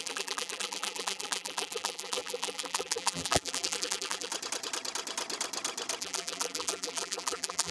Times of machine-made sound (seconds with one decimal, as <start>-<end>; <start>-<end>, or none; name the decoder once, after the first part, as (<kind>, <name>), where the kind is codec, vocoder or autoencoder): 0.0-4.3 (vocoder, BigVGAN v2); 6.0-7.7